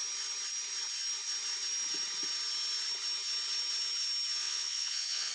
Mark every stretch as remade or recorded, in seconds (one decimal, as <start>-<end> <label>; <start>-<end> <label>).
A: 0.0-4.4 recorded; 4.4-5.3 remade